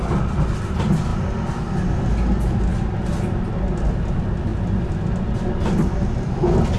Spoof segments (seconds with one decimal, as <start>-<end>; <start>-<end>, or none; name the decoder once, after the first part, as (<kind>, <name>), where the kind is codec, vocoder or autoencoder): none